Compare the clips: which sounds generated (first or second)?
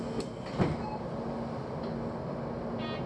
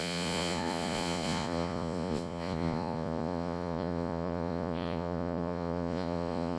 second